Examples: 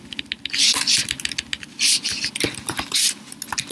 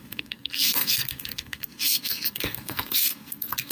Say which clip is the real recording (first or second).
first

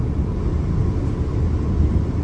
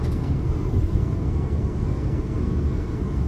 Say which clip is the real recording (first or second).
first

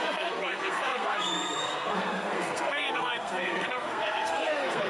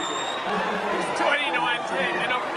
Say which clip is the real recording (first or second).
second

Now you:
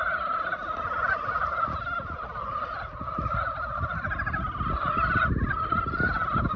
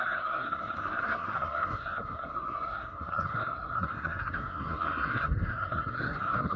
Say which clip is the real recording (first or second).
first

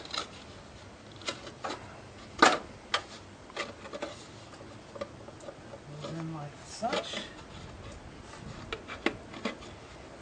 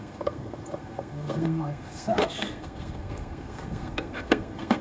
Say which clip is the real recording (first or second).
first